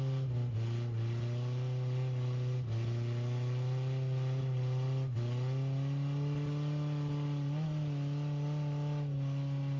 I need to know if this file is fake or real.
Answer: real